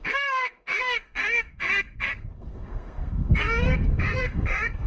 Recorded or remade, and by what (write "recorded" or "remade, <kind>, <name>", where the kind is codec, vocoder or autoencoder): remade, codec, SNAC